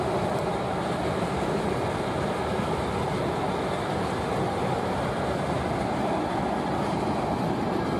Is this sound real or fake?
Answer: real